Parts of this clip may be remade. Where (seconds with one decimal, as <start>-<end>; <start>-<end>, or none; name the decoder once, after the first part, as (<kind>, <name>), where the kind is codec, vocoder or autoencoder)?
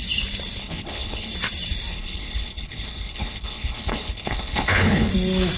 0.6-1.3 (codec, HILCodec); 1.9-5.1